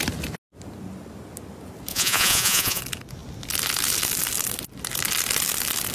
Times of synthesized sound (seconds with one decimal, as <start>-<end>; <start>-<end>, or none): 1.9-2.8